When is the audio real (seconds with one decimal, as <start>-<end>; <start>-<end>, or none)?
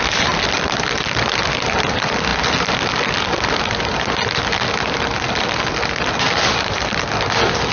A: none